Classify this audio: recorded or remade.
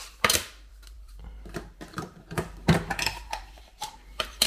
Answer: remade